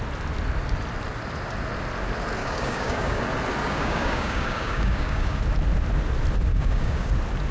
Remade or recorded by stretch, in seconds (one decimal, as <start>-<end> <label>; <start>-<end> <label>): 0.0-2.4 recorded; 2.4-3.2 remade; 3.2-3.6 recorded; 3.6-5.4 remade; 5.4-6.5 recorded; 6.5-7.1 remade; 7.1-7.5 recorded